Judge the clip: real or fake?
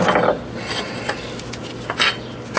real